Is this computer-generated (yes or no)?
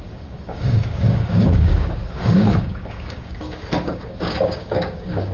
yes